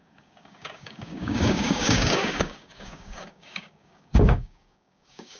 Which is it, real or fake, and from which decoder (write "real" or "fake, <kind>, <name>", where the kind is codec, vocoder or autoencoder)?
fake, codec, DAC